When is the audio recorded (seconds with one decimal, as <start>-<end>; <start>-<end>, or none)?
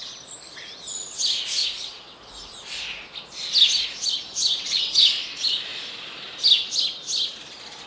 0.0-1.6; 2.2-4.4; 5.1-7.9